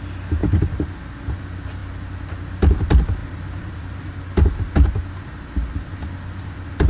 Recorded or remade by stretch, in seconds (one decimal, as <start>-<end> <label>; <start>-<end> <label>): 0.0-3.2 recorded; 3.2-4.0 remade; 4.0-6.9 recorded